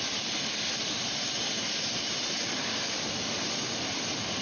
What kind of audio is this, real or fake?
real